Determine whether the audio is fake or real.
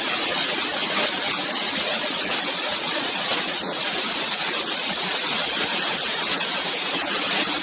fake